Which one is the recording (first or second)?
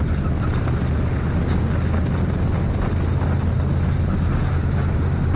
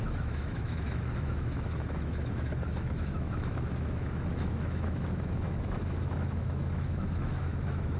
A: first